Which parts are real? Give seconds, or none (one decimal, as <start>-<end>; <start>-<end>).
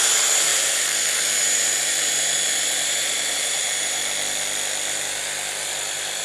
4.0-6.2